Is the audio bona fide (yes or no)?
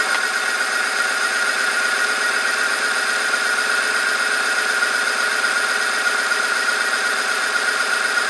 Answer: yes